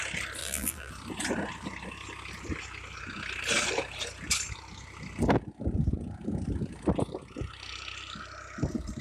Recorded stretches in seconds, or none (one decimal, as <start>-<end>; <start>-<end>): 0.0-0.4; 0.9-9.0